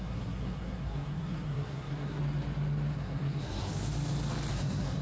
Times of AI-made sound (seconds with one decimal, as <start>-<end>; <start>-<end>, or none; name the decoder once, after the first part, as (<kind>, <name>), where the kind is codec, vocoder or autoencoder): 0.0-2.2 (codec, SNAC); 2.9-3.7; 4.5-5.0